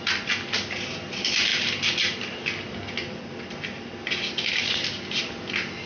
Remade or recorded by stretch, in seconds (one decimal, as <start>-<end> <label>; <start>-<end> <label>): 0.0-5.9 recorded